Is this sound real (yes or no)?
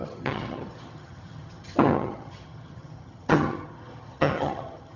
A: no